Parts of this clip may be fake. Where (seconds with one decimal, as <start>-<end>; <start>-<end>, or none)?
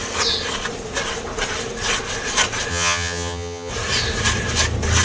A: 2.7-3.7